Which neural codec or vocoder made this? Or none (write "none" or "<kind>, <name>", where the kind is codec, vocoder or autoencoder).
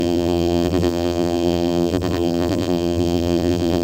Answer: vocoder, BigVGAN v2